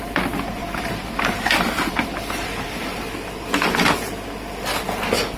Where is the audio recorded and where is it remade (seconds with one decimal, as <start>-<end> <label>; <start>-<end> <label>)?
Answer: 0.0-0.6 recorded; 0.6-3.2 remade; 3.2-5.4 recorded